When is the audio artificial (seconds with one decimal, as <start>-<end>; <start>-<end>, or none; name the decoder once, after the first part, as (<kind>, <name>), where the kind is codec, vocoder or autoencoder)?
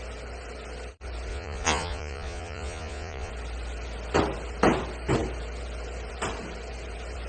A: 1.3-3.3 (vocoder, Vocos)